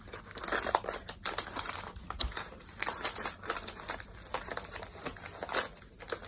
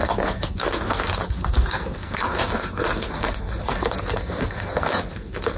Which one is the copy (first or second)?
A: second